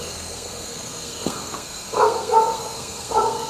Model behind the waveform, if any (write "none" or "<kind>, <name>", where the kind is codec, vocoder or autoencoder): codec, SNAC